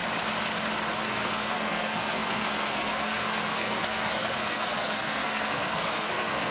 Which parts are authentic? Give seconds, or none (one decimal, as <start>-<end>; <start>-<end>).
0.0-1.0